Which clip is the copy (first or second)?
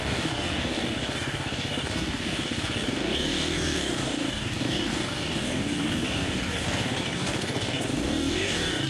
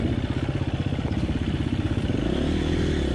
first